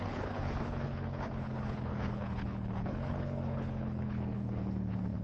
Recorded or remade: remade